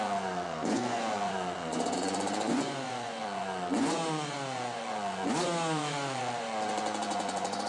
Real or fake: fake